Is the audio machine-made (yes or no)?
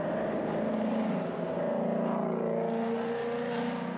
no